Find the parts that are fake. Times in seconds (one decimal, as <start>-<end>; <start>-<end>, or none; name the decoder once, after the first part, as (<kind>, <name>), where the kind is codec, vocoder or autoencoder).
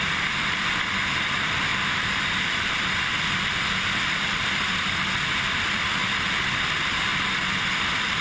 0.0-6.0 (vocoder, BigVGAN v2); 6.6-7.1; 7.7-8.2